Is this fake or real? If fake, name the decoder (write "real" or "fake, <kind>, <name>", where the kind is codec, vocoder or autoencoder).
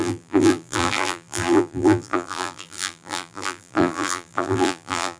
fake, vocoder, BigVGAN v2